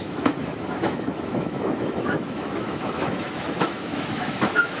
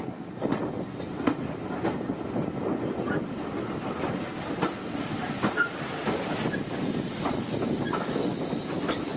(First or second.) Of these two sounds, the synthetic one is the first